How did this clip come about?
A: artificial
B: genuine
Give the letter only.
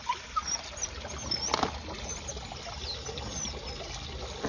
B